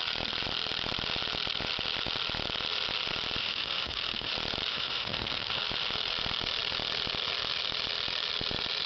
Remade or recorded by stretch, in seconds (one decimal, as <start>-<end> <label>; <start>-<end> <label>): 0.0-3.4 recorded; 3.4-4.3 remade; 4.3-4.7 recorded; 4.7-5.6 remade; 5.6-8.9 recorded